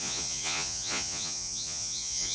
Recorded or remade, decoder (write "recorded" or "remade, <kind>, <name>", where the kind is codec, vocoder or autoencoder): remade, vocoder, Vocos